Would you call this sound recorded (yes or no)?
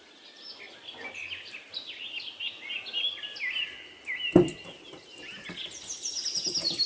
yes